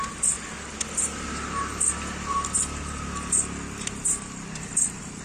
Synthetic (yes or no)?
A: no